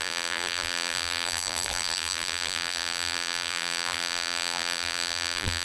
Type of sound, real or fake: fake